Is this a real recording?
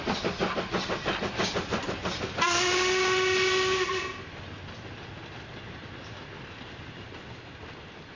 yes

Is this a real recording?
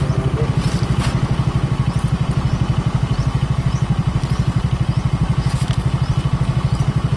yes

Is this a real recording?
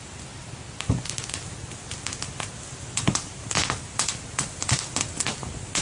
yes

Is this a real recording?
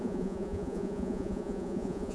no